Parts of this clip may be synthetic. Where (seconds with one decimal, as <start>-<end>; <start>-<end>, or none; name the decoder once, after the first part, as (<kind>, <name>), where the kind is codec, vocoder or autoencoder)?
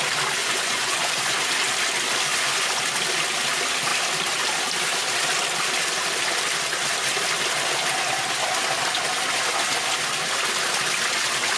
0.4-1.4 (vocoder, Vocos); 2.3-2.8